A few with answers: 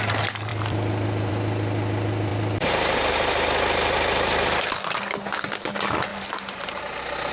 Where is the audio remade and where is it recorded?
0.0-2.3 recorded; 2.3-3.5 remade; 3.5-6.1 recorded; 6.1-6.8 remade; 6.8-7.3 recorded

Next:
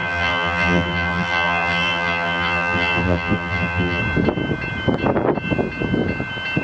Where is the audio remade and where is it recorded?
0.0-4.0 remade; 4.0-6.6 recorded

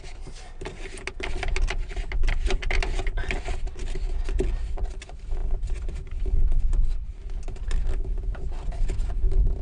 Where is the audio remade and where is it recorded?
0.0-9.6 recorded

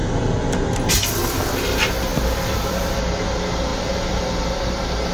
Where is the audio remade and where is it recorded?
0.0-2.1 recorded; 2.1-3.0 remade; 3.0-3.7 recorded; 3.7-4.2 remade; 4.2-5.1 recorded

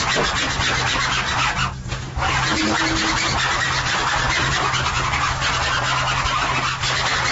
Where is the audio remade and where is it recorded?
0.0-7.3 recorded

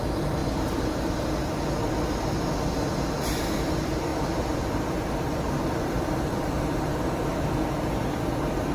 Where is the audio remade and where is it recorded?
0.0-0.4 recorded; 0.4-1.2 remade; 1.2-4.1 recorded; 4.1-7.0 remade; 7.0-8.7 recorded

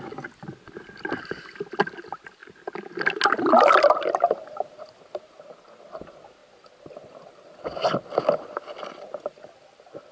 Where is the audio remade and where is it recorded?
0.0-10.1 recorded

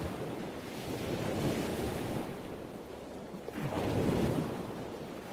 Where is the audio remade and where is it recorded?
0.0-1.7 recorded; 1.7-2.4 remade; 2.4-5.3 recorded